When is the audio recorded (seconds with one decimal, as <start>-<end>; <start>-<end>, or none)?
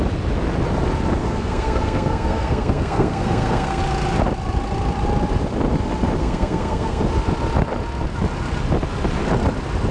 0.0-1.2; 3.8-6.2; 7.0-9.9